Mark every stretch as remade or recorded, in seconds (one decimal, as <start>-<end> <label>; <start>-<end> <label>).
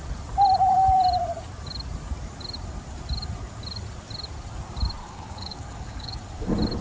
0.0-5.0 recorded; 5.0-6.2 remade; 6.2-6.8 recorded